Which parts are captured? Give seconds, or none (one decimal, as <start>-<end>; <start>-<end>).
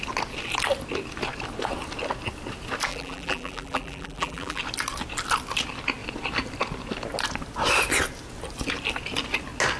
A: 0.0-2.9; 4.6-9.8